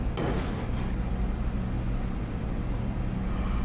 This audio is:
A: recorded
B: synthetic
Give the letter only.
A